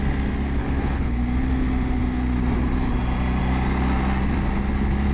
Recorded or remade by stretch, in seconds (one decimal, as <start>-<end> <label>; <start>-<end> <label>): 0.0-0.6 recorded; 0.6-1.2 remade; 1.2-5.1 recorded